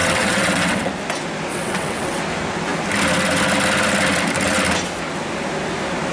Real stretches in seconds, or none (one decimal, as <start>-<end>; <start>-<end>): 0.9-1.5; 2.2-6.1